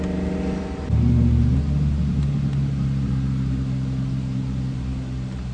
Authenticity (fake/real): real